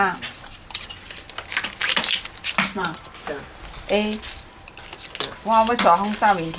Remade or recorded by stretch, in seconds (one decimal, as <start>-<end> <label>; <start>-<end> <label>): 0.0-6.6 recorded